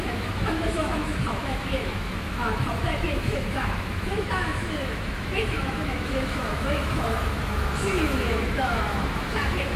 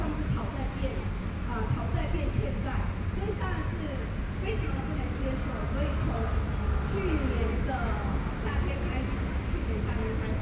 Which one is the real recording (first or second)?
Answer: second